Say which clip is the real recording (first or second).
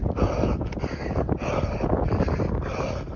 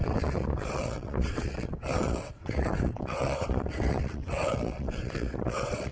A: first